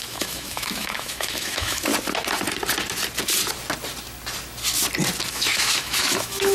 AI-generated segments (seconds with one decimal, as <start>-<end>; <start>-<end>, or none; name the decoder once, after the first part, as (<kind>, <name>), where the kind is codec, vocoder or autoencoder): 0.0-1.9 (autoencoder, DAC-VAE); 5.3-6.5